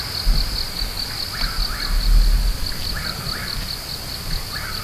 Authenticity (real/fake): real